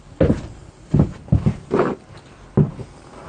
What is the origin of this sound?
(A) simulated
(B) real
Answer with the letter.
B